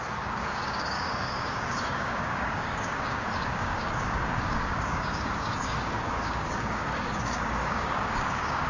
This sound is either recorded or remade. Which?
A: remade